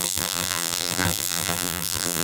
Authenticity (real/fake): fake